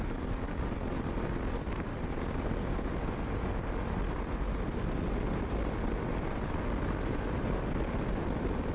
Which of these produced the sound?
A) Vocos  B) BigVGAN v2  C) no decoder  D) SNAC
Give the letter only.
C